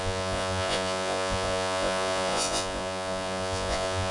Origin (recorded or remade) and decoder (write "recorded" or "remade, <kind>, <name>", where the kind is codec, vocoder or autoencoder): remade, vocoder, Vocos